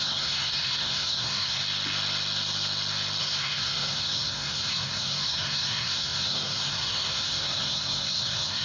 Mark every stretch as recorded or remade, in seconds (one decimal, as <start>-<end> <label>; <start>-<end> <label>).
0.0-1.6 remade; 1.6-3.2 recorded; 3.2-8.6 remade